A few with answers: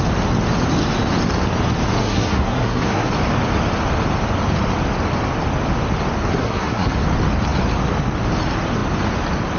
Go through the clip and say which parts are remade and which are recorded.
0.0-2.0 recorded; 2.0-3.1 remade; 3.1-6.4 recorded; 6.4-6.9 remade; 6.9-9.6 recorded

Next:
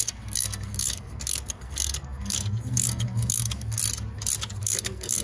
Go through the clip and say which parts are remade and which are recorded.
0.0-3.8 remade; 3.8-4.6 recorded; 4.6-5.2 remade

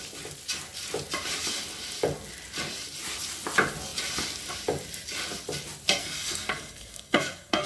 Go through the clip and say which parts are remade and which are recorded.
0.0-6.0 recorded; 6.0-7.7 remade

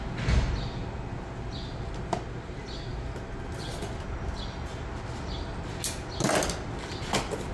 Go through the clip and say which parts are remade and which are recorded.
0.0-7.5 recorded

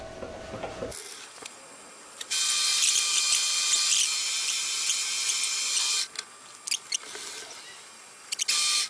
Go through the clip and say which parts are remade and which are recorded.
0.0-8.9 recorded

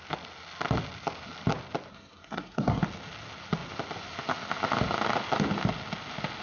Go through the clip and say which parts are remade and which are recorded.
0.0-1.9 recorded; 1.9-2.8 remade; 2.8-6.4 recorded

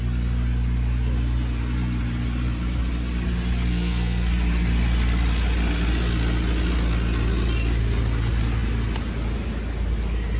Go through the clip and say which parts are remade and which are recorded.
0.0-3.7 recorded; 3.7-4.3 remade; 4.3-10.4 recorded

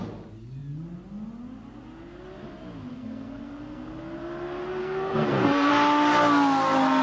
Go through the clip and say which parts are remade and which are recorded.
0.0-2.9 recorded; 2.9-4.0 remade; 4.0-4.8 recorded; 4.8-5.7 remade; 5.7-7.0 recorded